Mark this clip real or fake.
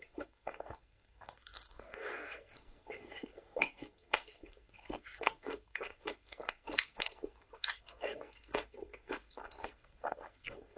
fake